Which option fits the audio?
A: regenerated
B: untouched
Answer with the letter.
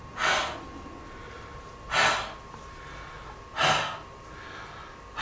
B